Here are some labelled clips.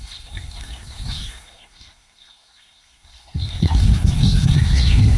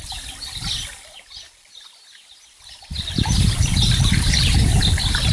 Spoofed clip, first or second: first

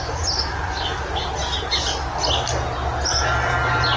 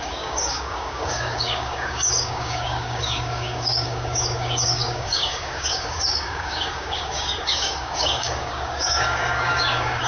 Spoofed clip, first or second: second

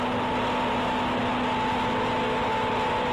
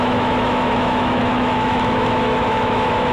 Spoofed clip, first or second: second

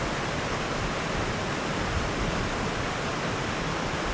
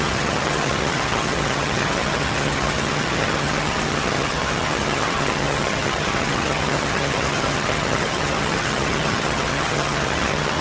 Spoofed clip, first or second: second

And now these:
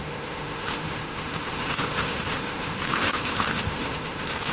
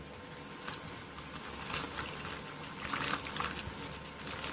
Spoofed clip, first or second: first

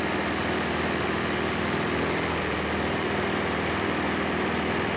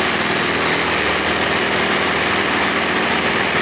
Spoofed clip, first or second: first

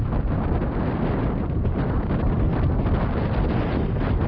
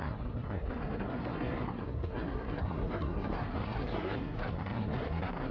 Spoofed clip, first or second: second